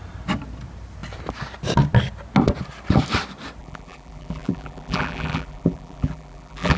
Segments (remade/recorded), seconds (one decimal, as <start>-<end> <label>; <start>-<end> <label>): 0.0-3.6 recorded; 3.6-6.8 remade